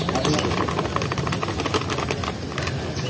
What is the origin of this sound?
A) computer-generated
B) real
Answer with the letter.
B